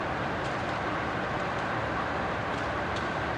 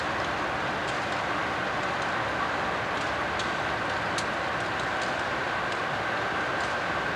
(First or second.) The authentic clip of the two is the second